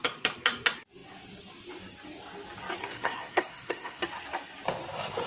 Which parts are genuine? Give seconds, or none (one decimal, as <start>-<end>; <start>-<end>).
0.0-2.8; 4.0-5.3